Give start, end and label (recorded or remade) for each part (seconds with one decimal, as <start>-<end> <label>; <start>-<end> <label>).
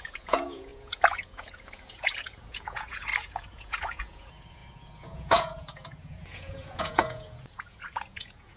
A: 0.0-8.6 remade